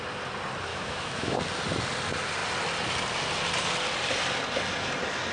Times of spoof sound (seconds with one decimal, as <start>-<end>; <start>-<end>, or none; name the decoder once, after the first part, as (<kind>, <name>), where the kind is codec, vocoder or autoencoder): 0.7-1.4 (autoencoder, DAC-VAE)